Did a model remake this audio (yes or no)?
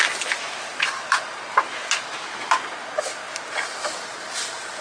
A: no